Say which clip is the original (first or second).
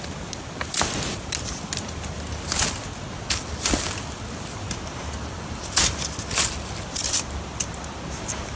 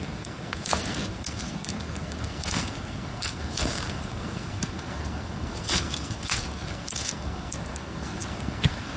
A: first